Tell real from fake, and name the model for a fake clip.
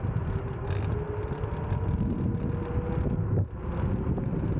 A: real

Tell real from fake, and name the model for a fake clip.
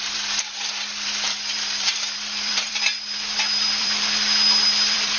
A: fake, vocoder, BigVGAN v2